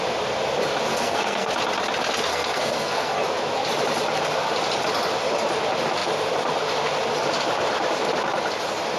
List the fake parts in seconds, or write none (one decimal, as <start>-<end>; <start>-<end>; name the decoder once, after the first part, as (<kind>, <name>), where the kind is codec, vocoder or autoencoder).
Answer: 0.9-1.5 (codec, SNAC); 2.3-3.2